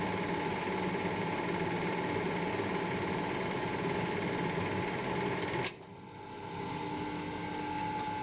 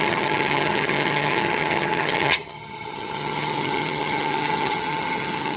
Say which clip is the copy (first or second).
second